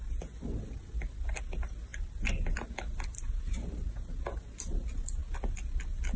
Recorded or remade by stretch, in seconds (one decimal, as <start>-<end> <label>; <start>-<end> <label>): 0.0-6.2 recorded